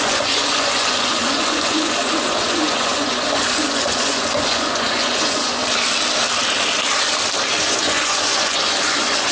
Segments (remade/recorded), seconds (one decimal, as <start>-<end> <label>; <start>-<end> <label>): 0.0-5.6 remade; 5.6-7.6 recorded; 7.6-9.3 remade